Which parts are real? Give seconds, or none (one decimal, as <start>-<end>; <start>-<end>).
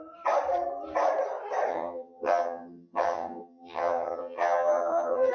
0.0-1.7